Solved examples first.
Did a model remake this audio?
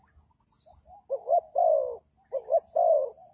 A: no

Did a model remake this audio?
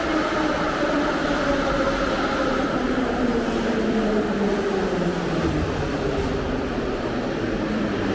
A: no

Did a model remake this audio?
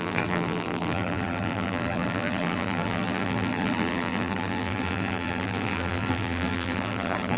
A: yes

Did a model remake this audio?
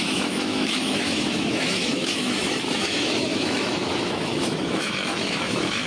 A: yes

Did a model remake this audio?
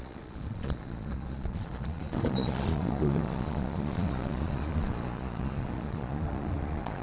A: yes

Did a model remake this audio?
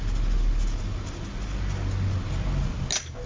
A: no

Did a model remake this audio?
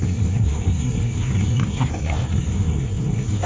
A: yes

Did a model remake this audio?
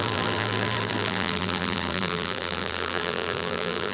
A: yes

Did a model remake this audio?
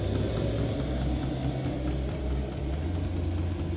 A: no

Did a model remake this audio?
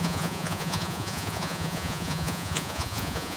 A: yes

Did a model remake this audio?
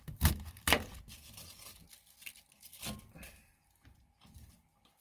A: no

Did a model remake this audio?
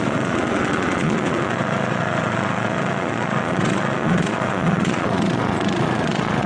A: yes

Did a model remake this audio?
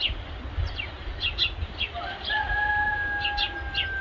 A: no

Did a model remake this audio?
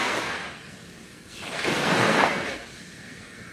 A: yes